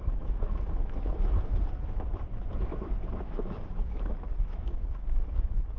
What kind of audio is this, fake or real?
fake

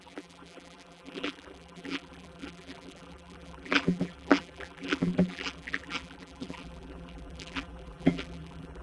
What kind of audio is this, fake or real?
fake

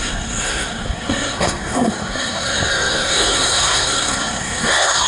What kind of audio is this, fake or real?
fake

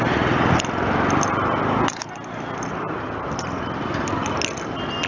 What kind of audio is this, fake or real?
real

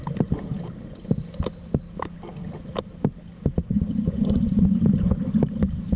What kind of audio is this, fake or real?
real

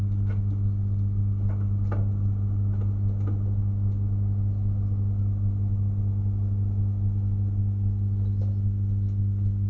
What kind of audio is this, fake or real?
real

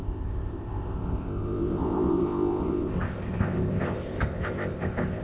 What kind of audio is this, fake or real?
fake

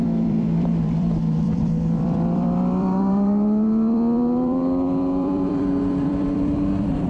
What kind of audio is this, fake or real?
fake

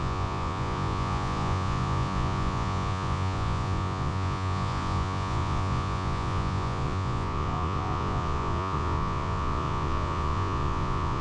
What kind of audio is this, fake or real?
fake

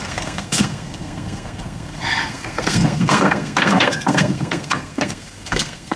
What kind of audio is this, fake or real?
fake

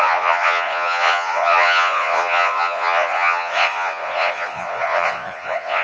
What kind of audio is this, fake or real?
fake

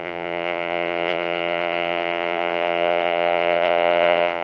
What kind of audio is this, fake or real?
fake